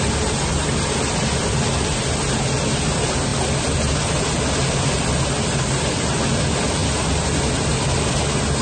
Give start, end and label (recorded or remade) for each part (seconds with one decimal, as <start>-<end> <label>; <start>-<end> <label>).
0.0-8.6 recorded